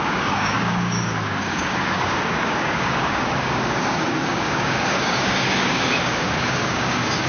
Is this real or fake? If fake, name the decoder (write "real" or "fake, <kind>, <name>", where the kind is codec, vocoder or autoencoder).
fake, codec, DAC